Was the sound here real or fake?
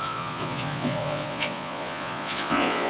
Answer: fake